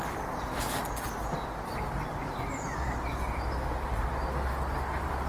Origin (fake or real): real